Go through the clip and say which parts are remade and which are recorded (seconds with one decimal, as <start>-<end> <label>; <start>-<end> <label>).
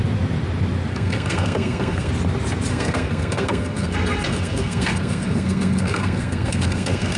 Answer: 0.0-0.9 recorded; 0.9-2.1 remade; 2.1-2.7 recorded; 2.7-7.2 remade